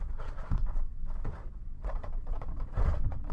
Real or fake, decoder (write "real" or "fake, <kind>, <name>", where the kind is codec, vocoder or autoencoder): fake, vocoder, Vocos